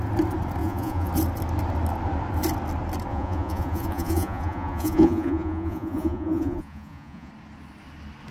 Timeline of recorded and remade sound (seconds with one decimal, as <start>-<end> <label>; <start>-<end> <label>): 0.0-0.6 recorded; 0.6-1.1 remade; 1.1-3.1 recorded; 3.1-7.3 remade; 7.3-8.3 recorded